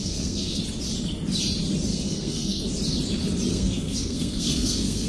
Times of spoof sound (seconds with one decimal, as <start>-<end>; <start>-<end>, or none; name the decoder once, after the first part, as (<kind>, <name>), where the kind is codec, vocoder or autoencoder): 0.0-0.6 (codec, SNAC); 1.9-2.7; 3.5-5.1